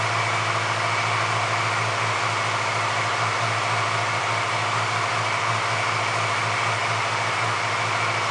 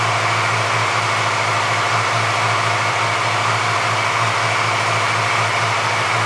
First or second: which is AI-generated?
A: first